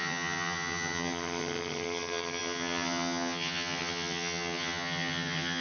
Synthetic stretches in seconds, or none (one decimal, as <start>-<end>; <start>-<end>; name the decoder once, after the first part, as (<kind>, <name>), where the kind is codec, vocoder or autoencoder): 0.0-5.6 (vocoder, HiFi-GAN)